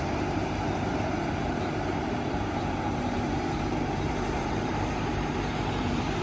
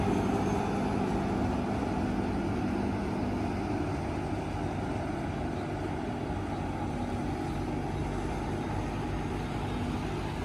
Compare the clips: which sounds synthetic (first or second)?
first